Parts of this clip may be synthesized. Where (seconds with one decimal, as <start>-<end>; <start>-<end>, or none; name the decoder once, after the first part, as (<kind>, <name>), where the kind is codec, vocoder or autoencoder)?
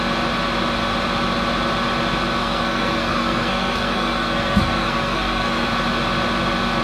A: 2.4-5.7 (codec, SNAC)